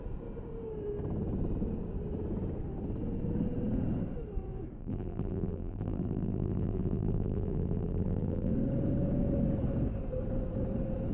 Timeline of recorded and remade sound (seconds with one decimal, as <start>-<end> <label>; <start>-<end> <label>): 0.0-4.8 recorded; 4.8-8.5 remade; 8.5-11.1 recorded